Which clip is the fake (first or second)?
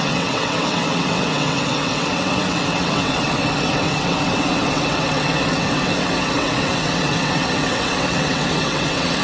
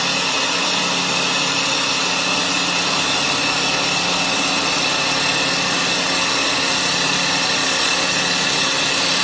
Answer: first